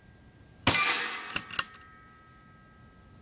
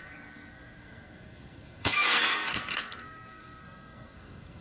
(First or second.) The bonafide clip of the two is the first